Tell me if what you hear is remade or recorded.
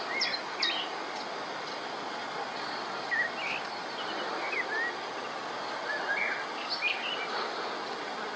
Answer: recorded